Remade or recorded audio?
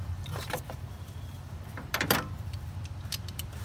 remade